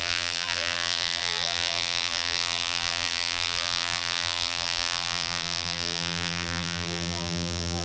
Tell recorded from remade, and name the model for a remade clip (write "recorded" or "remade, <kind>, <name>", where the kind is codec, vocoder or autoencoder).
remade, vocoder, BigVGAN v2